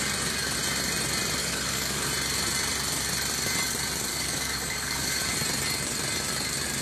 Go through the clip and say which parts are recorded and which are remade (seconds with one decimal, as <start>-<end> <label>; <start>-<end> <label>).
0.0-1.4 recorded; 1.4-2.1 remade; 2.1-4.1 recorded; 4.1-5.2 remade; 5.2-6.8 recorded